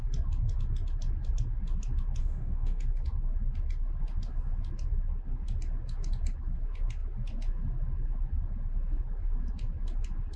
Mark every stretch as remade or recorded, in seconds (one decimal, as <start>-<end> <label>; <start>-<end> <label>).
0.0-2.2 recorded; 2.2-2.8 remade; 2.8-10.4 recorded